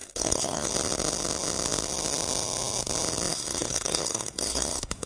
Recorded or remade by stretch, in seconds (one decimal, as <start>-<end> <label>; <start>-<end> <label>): 0.0-0.7 remade; 0.7-3.3 recorded; 3.3-5.1 remade